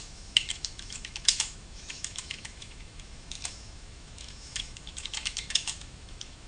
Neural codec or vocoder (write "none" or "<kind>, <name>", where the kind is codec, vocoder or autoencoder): autoencoder, DAC-VAE